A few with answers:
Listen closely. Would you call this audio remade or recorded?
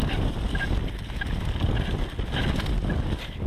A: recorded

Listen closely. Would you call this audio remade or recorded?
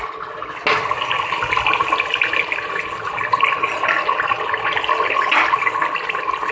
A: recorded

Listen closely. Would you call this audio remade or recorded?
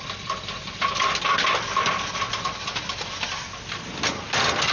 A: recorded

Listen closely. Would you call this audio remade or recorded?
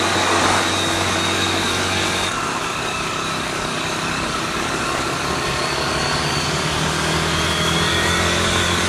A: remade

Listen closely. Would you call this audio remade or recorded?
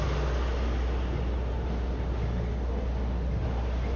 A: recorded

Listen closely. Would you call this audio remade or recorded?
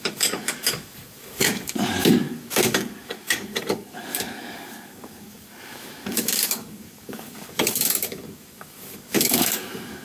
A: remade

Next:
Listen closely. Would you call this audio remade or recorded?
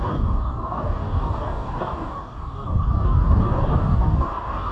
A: remade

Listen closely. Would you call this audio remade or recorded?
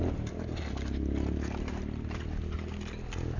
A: recorded